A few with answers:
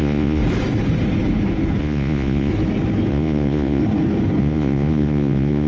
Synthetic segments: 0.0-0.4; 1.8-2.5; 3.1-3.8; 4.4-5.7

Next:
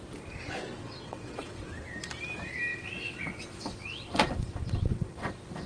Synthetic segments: 0.8-1.8; 2.7-5.3

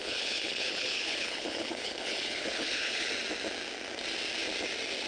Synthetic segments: 0.0-3.1

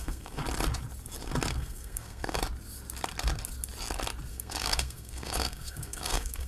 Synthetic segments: 0.0-0.4; 1.5-2.4; 4.3-6.5

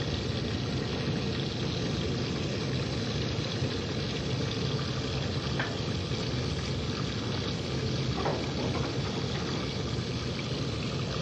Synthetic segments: none

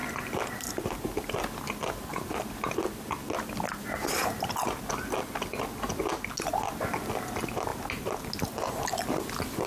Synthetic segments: none